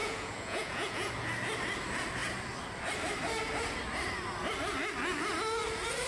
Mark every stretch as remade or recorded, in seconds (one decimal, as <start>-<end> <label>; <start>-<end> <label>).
0.0-1.1 remade; 1.1-6.1 recorded